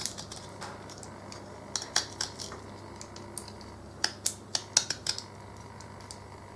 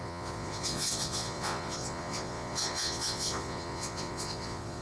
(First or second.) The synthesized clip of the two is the second